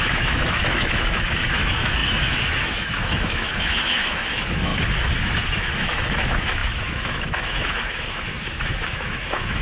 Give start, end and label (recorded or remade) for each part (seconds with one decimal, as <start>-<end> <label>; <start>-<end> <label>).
0.0-4.7 remade; 4.7-5.2 recorded; 5.2-9.6 remade